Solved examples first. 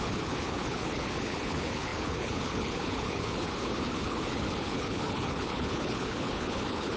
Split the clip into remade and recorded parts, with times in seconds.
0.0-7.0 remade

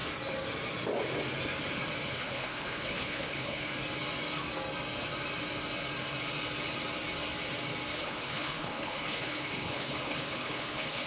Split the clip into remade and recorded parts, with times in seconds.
0.0-2.1 recorded; 2.1-3.7 remade; 3.7-7.9 recorded; 7.9-11.1 remade

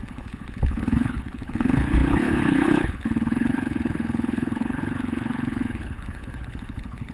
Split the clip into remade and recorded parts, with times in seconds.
0.0-7.1 remade

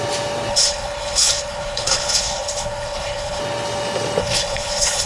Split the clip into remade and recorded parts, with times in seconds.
0.0-0.5 recorded; 0.5-3.4 remade; 3.4-4.2 recorded; 4.2-5.1 remade